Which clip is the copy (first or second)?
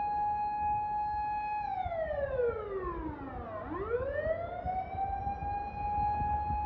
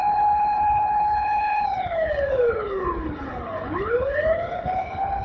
second